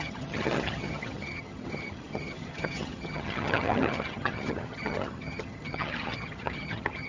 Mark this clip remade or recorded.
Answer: remade